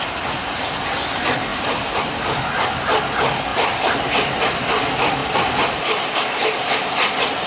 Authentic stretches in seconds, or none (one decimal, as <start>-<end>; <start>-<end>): 0.0-5.2; 7.1-7.5